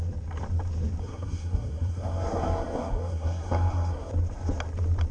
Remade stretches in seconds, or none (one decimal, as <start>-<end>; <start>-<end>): 1.0-4.1